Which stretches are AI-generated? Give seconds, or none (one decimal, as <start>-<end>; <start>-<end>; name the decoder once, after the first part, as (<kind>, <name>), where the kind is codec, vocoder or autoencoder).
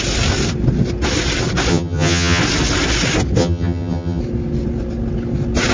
1.7-2.4 (vocoder, HiFi-GAN); 3.4-4.2